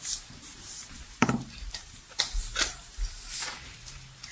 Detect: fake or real fake